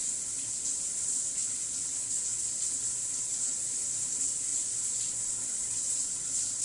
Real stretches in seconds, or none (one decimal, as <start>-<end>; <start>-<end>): 0.0-6.6